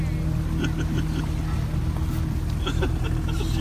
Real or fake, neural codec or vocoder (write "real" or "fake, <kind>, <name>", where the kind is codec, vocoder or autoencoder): real